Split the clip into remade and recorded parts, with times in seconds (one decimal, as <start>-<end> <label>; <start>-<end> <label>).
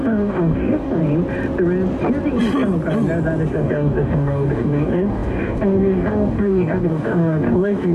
0.0-1.0 remade; 1.0-3.5 recorded; 3.5-7.9 remade